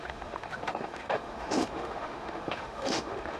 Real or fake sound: fake